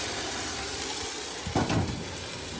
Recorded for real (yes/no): yes